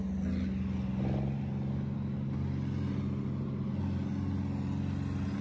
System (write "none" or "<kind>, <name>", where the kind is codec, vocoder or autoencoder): none